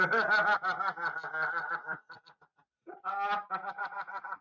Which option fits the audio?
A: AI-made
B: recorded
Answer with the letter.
B